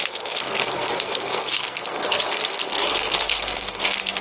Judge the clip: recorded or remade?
remade